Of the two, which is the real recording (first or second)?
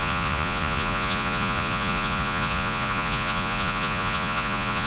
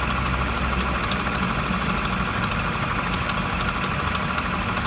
second